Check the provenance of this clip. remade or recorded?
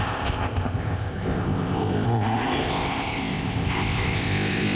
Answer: remade